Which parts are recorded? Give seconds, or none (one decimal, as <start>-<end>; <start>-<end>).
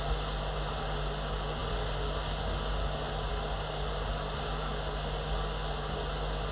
0.0-6.5